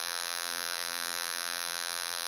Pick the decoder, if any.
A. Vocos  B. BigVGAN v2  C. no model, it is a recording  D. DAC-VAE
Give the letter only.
B